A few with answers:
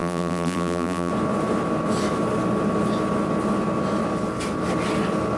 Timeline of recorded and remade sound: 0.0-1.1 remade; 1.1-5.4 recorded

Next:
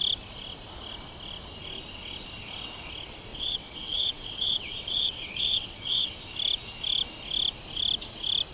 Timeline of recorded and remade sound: 0.0-3.3 recorded; 3.3-6.1 remade; 6.1-8.5 recorded

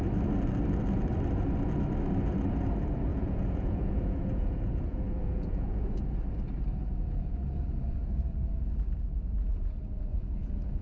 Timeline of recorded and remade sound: 0.0-3.1 recorded; 3.1-6.0 remade; 6.0-6.8 recorded; 6.8-8.2 remade; 8.2-10.1 recorded; 10.1-10.8 remade

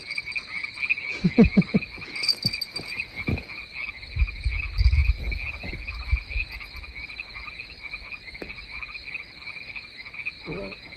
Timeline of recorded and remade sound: 0.0-11.0 recorded

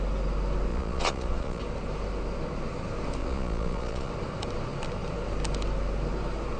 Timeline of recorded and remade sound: 0.0-0.7 recorded; 0.7-1.6 remade; 1.6-3.2 recorded; 3.2-4.1 remade; 4.1-6.6 recorded